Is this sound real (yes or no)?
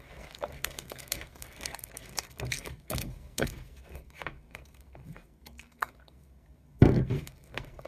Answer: no